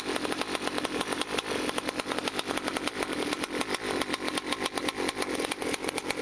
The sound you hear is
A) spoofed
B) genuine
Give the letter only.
B